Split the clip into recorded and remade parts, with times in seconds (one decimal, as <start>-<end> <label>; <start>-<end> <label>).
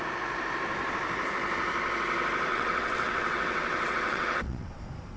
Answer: 0.0-2.5 recorded; 2.5-4.8 remade; 4.8-5.2 recorded